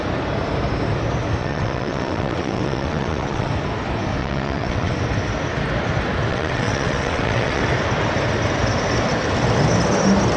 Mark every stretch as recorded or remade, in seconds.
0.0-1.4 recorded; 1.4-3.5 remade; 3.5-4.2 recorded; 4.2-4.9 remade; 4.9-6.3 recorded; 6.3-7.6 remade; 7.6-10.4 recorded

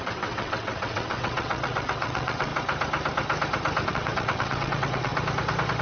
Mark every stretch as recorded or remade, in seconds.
0.0-2.5 remade; 2.5-3.9 recorded; 3.9-5.1 remade; 5.1-5.8 recorded

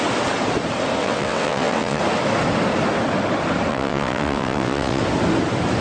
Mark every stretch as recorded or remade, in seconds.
0.0-1.0 recorded; 1.0-2.0 remade; 2.0-3.7 recorded; 3.7-5.0 remade; 5.0-5.8 recorded